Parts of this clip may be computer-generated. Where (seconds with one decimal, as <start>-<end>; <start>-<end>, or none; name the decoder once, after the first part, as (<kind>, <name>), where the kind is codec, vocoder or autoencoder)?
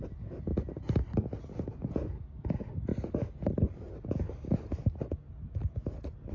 none